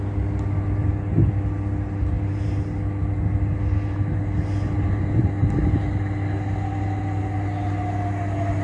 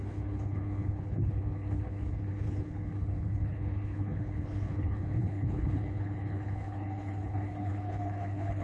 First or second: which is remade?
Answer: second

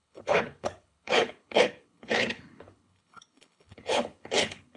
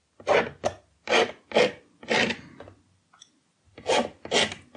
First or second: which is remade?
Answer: first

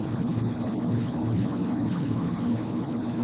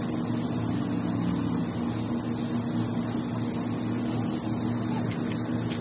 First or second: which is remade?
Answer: first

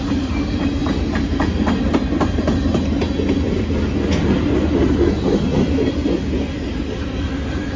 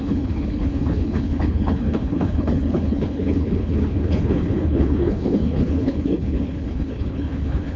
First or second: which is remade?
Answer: second